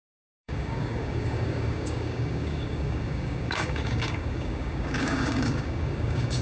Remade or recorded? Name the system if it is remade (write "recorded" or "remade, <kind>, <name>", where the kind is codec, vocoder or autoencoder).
remade, codec, DAC